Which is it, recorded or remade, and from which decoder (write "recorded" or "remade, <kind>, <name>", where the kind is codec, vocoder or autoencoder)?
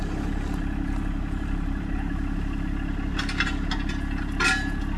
recorded